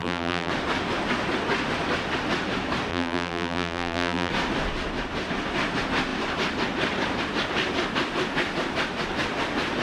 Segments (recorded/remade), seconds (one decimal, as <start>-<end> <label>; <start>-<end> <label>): 0.0-0.5 remade; 0.5-2.9 recorded; 2.9-4.3 remade; 4.3-9.8 recorded